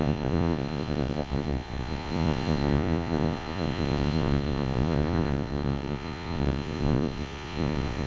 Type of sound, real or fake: fake